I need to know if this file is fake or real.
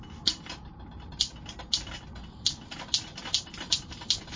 real